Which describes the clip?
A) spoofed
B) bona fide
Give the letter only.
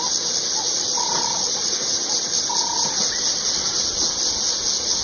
B